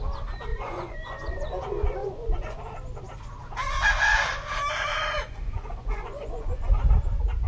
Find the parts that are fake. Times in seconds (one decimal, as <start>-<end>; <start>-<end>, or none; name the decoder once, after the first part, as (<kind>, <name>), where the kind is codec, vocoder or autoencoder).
0.5-1.5 (vocoder, Vocos); 2.0-2.6; 4.9-6.9